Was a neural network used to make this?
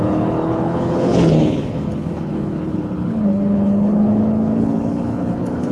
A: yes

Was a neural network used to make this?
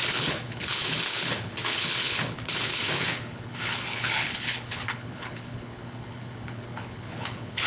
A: yes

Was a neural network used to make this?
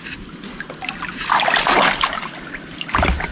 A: no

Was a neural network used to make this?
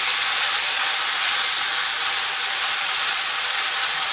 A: no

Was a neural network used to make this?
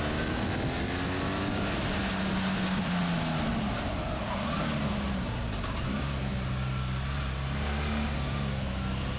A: no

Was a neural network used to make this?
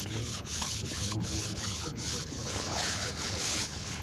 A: yes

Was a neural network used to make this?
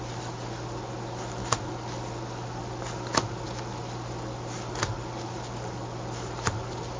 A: no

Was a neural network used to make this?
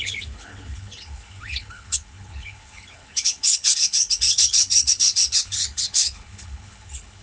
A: yes